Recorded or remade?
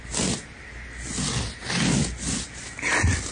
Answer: recorded